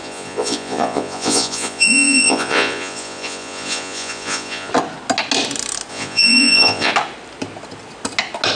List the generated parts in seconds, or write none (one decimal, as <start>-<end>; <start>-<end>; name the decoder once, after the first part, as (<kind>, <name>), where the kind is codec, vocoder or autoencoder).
0.0-4.7 (vocoder, Vocos); 5.9-6.9